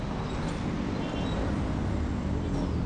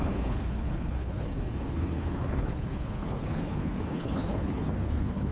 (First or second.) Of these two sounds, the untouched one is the first